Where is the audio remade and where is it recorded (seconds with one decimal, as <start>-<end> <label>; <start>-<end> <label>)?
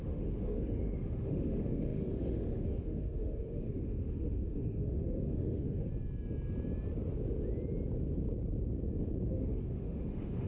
0.0-5.9 remade; 5.9-9.3 recorded; 9.3-10.5 remade